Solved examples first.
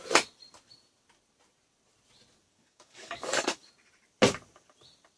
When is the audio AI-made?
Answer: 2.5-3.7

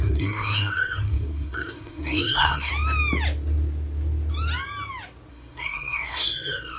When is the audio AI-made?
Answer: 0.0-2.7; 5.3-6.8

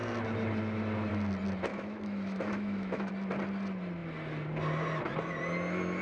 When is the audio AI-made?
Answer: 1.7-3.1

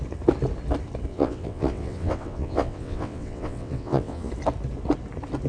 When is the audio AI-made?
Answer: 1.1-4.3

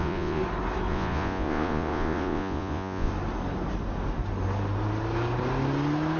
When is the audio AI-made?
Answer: 0.0-0.4; 0.9-3.1

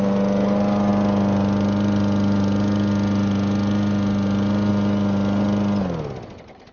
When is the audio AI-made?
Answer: none

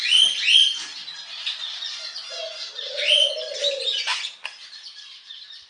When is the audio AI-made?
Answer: 0.9-1.6; 4.1-5.7